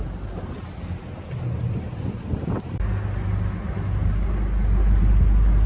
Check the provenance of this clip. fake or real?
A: real